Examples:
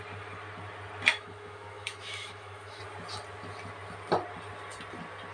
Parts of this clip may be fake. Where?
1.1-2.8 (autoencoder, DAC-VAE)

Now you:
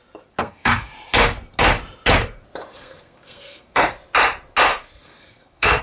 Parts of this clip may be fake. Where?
0.4-0.9 (codec, SNAC); 2.7-3.9; 4.7-5.8

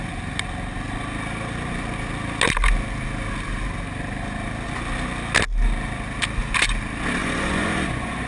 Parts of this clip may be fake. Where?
7.2-8.3 (vocoder, Vocos)

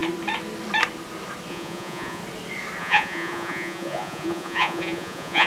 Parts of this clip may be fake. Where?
1.5-2.2 (vocoder, Vocos); 2.8-5.5

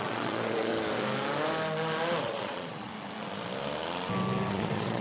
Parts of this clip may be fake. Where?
0.0-0.7 (vocoder, Vocos); 2.2-2.9; 4.5-5.0

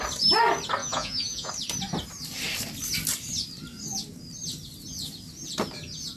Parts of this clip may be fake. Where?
0.8-1.5 (vocoder, Vocos)